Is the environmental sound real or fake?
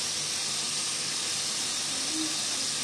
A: real